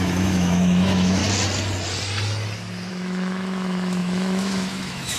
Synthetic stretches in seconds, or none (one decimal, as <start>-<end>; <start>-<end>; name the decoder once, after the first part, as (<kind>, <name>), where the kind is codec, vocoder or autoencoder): 0.0-1.2 (autoencoder, DAC-VAE); 2.9-5.2